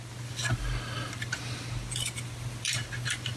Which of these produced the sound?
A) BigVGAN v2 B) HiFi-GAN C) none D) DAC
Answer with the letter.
A